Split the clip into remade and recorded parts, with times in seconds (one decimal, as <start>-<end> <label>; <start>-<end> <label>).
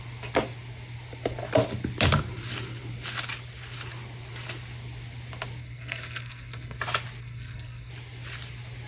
0.0-5.6 recorded; 5.6-6.8 remade; 6.8-7.2 recorded; 7.2-7.9 remade; 7.9-8.9 recorded